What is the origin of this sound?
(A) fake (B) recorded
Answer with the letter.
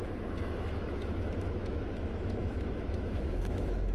A